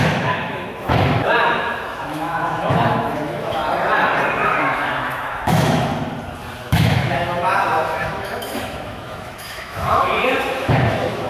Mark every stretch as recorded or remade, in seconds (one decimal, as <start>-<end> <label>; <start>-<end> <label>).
0.0-3.6 remade; 3.6-4.6 recorded; 4.6-5.9 remade; 5.9-6.6 recorded; 6.6-11.3 remade